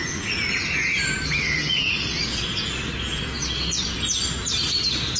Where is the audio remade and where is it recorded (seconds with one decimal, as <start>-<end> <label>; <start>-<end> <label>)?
0.0-3.4 remade; 3.4-5.2 recorded